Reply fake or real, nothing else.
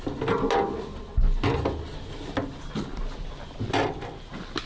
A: real